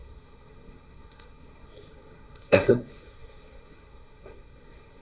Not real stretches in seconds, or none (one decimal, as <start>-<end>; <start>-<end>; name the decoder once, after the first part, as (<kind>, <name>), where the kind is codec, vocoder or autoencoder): 0.0-5.0 (codec, SNAC)